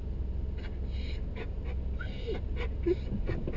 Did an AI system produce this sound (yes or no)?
no